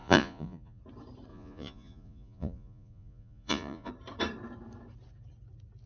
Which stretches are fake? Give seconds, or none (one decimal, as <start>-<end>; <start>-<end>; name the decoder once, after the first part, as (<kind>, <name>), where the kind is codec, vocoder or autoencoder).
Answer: 0.0-0.8 (vocoder, Vocos); 1.3-3.9